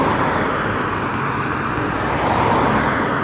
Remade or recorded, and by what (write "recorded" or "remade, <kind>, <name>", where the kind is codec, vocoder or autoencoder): recorded